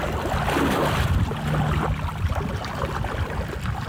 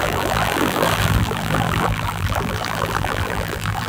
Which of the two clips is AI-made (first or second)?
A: second